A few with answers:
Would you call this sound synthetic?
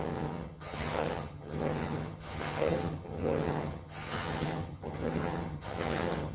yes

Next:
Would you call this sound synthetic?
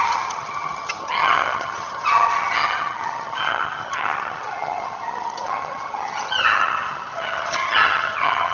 yes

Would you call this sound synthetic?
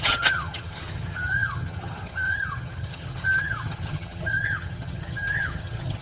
yes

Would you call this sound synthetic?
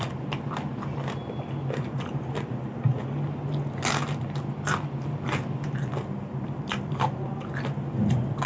no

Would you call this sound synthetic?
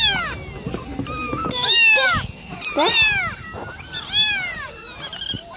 no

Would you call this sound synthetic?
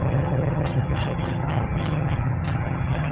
yes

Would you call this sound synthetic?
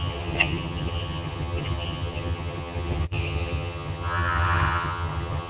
yes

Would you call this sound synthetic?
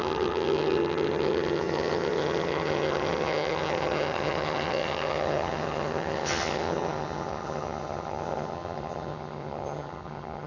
yes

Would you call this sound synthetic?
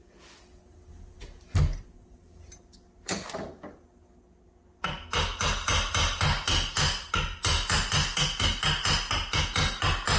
no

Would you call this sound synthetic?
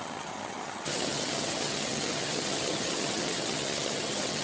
yes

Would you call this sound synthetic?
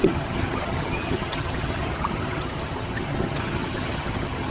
yes